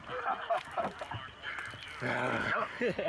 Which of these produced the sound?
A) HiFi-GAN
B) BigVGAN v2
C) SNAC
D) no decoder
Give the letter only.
D